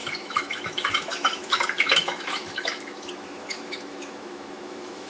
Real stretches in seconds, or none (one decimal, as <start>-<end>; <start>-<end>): none

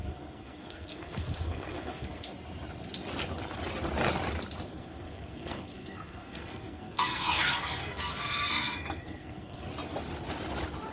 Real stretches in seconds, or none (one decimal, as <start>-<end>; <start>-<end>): 2.3-4.7; 9.7-10.9

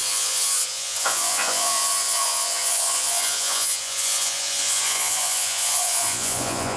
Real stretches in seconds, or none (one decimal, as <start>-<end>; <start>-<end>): none